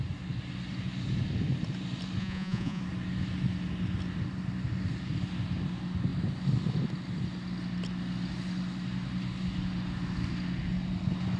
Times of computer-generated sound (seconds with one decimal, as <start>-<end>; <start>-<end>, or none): 2.2-2.8